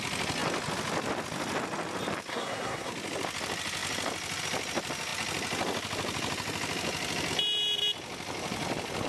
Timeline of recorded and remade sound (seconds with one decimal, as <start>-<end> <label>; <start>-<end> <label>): 0.0-2.3 recorded; 2.3-2.9 remade; 2.9-9.1 recorded